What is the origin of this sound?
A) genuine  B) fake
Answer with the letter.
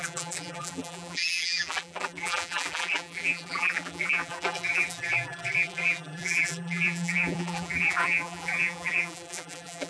B